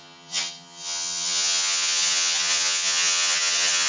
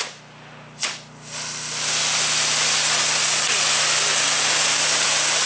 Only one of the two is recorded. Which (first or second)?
second